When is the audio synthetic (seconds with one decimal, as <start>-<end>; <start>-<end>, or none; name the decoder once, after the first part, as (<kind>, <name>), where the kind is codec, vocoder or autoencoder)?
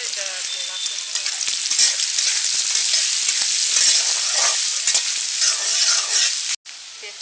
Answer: none